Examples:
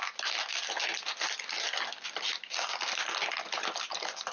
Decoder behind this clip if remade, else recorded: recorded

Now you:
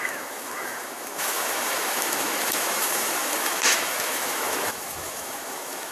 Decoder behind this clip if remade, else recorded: remade, autoencoder, DAC-VAE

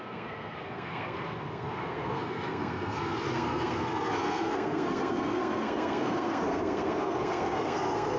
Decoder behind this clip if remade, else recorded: remade, codec, SNAC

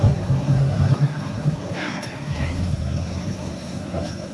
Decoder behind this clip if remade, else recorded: remade, codec, SNAC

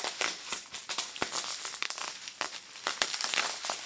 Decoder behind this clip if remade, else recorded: remade, vocoder, BigVGAN v2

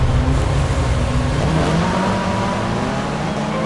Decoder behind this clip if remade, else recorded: recorded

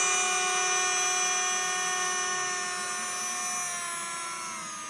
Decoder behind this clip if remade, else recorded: recorded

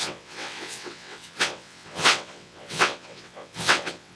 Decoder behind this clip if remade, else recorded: remade, vocoder, WaveNeXt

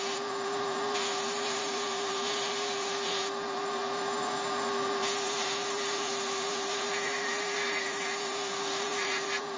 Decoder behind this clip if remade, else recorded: remade, vocoder, BigVGAN v2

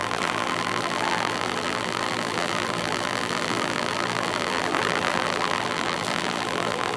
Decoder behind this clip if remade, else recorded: remade, vocoder, BigVGAN v2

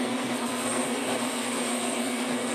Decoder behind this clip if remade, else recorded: remade, codec, SNAC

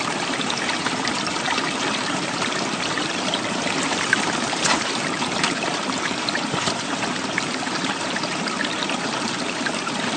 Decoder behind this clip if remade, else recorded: remade, vocoder, BigVGAN v2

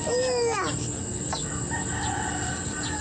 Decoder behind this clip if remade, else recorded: recorded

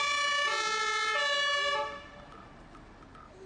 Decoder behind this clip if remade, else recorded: recorded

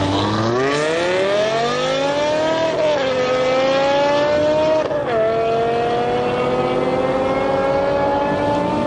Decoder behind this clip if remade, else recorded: recorded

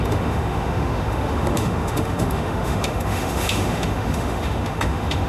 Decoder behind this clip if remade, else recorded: remade, autoencoder, DAC-VAE